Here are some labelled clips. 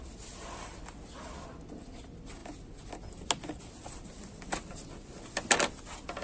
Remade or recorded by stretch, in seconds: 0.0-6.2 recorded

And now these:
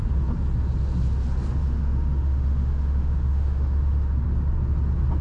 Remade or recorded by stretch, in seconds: 0.0-1.6 recorded; 1.6-4.1 remade; 4.1-5.2 recorded